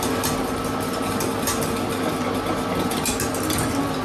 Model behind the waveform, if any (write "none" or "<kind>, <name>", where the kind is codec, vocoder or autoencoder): none